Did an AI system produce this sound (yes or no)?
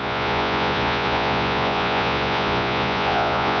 yes